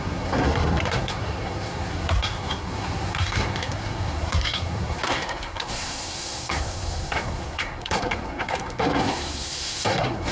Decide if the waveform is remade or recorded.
remade